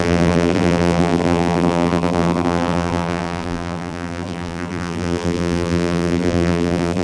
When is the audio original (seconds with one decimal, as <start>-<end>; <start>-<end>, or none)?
none